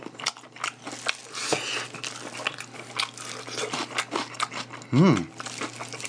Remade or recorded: recorded